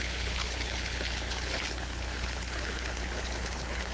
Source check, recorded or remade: remade